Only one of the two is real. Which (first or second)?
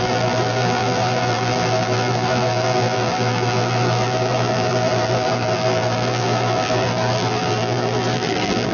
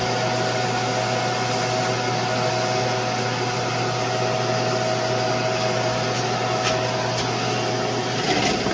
second